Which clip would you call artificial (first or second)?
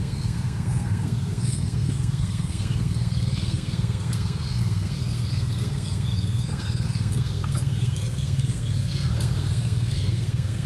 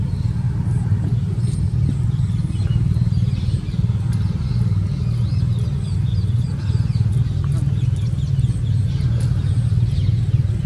first